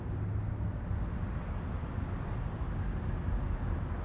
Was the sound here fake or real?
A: real